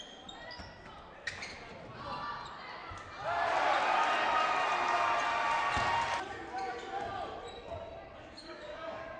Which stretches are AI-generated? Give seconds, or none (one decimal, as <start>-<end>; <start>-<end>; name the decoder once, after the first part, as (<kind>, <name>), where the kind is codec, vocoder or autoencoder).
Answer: 8.4-9.2 (codec, DAC)